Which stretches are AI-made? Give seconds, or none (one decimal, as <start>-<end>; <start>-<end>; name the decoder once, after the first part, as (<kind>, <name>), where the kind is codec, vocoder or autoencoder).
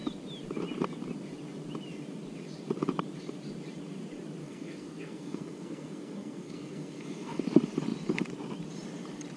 4.4-7.4 (codec, SNAC)